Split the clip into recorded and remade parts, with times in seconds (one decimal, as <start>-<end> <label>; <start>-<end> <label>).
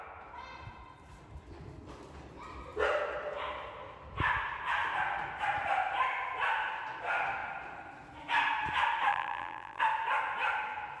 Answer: 0.0-9.1 recorded; 9.1-9.8 remade; 9.8-11.0 recorded